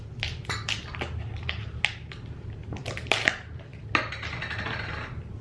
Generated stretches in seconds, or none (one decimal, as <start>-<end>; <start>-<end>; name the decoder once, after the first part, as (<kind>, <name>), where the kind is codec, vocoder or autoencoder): none